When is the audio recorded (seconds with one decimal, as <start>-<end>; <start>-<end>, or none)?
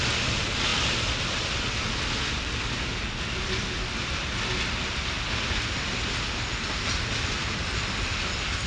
0.0-8.7